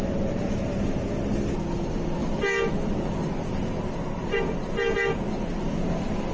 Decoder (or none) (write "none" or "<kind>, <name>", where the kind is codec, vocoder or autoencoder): none